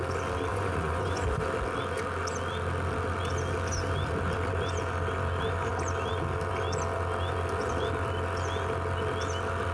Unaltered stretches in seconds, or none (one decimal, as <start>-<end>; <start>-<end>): 0.0-0.5; 1.4-9.7